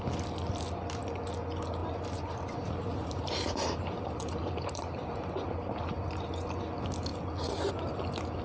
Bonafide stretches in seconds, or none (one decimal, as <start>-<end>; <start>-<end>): 0.0-1.8; 6.6-8.4